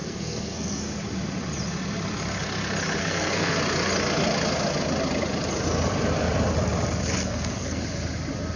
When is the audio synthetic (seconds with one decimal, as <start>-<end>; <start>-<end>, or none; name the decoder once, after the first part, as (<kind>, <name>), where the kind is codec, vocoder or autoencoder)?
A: 0.0-0.8 (codec, SNAC); 3.0-3.6; 7.2-7.8